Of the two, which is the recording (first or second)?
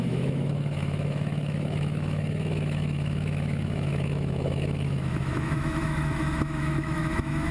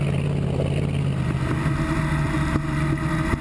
second